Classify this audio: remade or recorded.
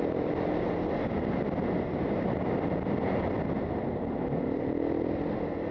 recorded